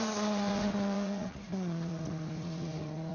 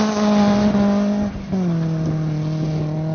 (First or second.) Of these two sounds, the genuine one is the second